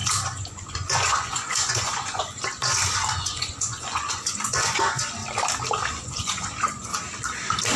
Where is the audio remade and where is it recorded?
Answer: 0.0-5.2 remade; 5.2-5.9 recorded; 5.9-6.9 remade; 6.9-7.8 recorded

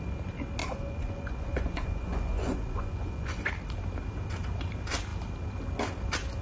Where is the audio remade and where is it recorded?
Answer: 0.0-0.6 recorded; 0.6-3.5 remade; 3.5-6.4 recorded

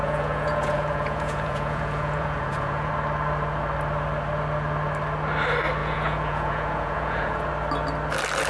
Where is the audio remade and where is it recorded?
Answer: 0.0-2.9 remade; 2.9-5.8 recorded; 5.8-7.5 remade; 7.5-8.5 recorded

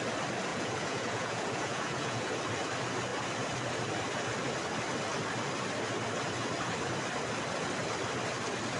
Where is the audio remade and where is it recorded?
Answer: 0.0-0.5 recorded; 0.5-2.4 remade; 2.4-8.8 recorded

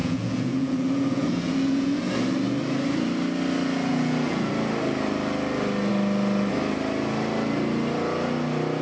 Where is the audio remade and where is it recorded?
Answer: 0.0-2.1 remade; 2.1-3.9 recorded; 3.9-4.5 remade; 4.5-8.8 recorded

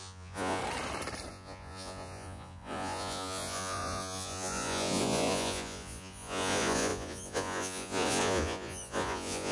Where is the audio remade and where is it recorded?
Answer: 0.0-0.6 remade; 0.6-1.3 recorded; 1.3-9.5 remade